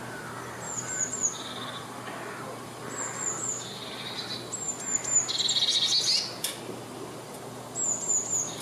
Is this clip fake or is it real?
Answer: real